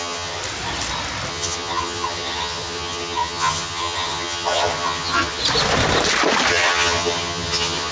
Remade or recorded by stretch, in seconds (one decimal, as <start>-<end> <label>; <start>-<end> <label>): 0.0-0.4 remade; 0.4-1.3 recorded; 1.3-5.4 remade; 5.4-6.5 recorded; 6.5-7.9 remade